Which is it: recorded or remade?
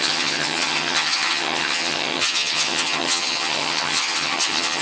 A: remade